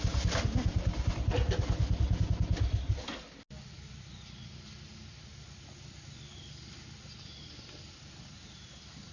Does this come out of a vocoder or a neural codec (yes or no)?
no